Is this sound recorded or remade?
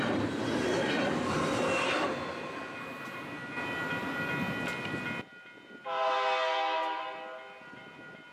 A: recorded